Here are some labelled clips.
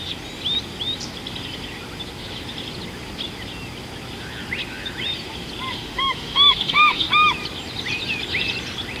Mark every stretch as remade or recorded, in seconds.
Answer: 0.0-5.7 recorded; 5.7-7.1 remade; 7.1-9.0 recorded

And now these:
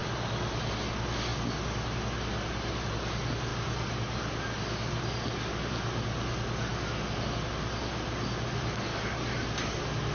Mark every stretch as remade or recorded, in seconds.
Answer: 0.0-10.1 recorded